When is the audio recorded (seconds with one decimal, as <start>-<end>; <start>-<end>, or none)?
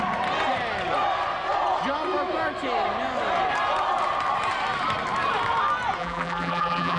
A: 0.0-6.0